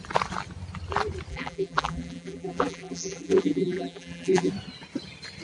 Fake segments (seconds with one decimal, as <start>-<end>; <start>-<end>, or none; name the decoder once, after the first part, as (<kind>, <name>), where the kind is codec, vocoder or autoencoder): 1.3-4.5 (vocoder, BigVGAN v2)